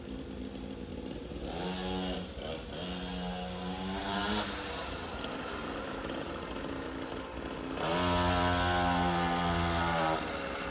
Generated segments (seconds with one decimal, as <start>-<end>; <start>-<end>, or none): 0.9-1.4; 4.0-6.9